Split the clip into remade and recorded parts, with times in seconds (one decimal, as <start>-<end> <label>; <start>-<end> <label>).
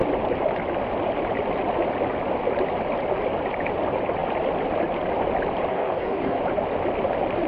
0.0-5.7 recorded; 5.7-6.4 remade; 6.4-7.5 recorded